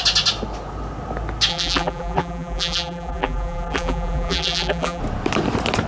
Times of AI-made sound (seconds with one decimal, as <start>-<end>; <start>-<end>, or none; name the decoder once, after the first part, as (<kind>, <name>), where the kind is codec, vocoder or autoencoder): 1.5-5.0 (vocoder, BigVGAN v2)